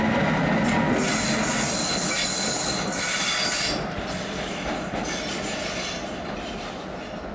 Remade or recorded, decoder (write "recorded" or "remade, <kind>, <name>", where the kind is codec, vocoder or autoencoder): recorded